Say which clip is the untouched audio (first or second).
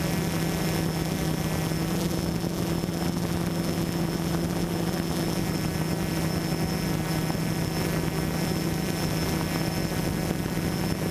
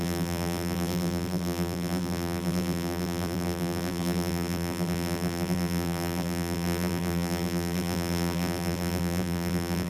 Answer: first